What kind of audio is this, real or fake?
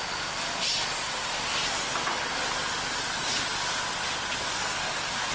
real